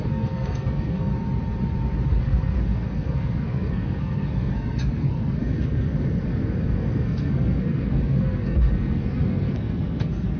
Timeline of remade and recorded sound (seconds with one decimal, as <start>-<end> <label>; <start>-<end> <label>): 0.0-1.1 remade; 1.1-2.2 recorded; 2.2-10.4 remade